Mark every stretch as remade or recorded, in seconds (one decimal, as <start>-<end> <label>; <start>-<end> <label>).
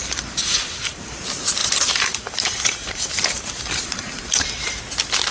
0.0-1.2 remade; 1.2-1.6 recorded; 1.6-4.8 remade; 4.8-5.3 recorded